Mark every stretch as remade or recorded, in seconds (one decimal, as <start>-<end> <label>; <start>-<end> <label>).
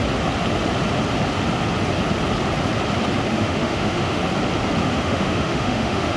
0.0-3.3 recorded; 3.3-4.2 remade; 4.2-4.8 recorded; 4.8-6.2 remade